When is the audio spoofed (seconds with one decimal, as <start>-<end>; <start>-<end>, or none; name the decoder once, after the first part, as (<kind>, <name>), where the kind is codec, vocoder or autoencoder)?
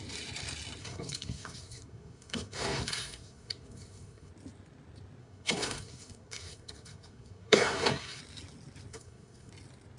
0.8-4.3 (codec, SNAC); 5.2-8.2; 8.9-9.5